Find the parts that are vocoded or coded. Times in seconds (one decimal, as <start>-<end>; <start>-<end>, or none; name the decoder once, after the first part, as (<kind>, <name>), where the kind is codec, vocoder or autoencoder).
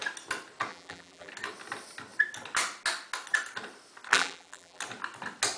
0.7-1.3 (vocoder, BigVGAN v2); 4.1-4.8